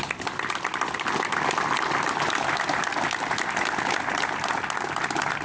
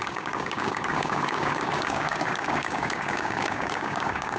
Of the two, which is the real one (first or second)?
first